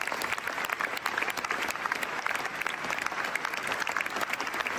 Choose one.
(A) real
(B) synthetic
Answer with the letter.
B